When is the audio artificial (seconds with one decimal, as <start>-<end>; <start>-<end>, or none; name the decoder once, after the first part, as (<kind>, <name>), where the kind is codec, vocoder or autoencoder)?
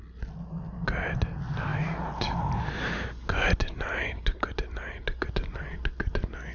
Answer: none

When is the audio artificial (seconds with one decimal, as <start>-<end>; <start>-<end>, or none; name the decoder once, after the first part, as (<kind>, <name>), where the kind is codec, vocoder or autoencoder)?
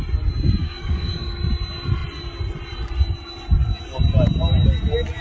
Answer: 0.6-1.4 (codec, DAC)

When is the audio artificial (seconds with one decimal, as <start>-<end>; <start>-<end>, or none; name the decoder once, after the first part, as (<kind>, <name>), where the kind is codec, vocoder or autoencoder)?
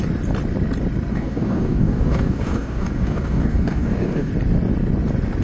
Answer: 1.1-4.3 (codec, DAC)